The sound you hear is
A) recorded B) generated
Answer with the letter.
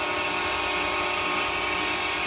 A